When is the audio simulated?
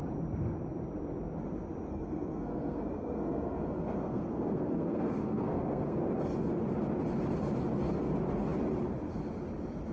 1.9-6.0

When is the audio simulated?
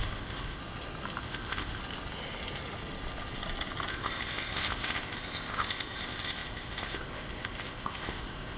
0.0-0.6; 1.2-1.8; 3.9-8.6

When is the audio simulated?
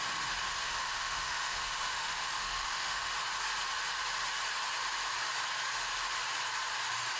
0.5-3.1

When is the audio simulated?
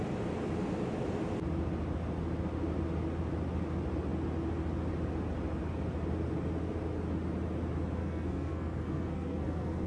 8.0-9.9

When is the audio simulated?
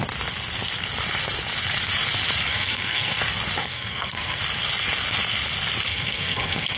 2.5-3.2; 3.6-4.4; 5.9-6.8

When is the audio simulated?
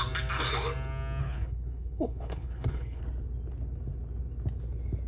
1.2-3.0